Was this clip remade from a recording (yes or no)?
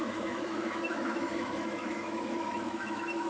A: yes